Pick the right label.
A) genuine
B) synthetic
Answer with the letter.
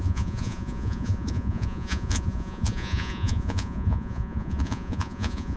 B